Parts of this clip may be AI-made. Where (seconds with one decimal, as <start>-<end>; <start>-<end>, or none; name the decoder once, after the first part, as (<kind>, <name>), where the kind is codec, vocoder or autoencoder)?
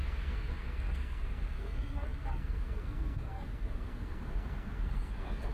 0.0-5.5 (codec, SNAC)